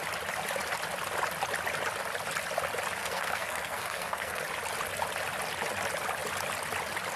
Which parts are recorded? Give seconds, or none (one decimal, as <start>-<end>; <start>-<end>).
0.0-3.0; 4.4-7.2